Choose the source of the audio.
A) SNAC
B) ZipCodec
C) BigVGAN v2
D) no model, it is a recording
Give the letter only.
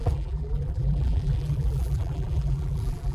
C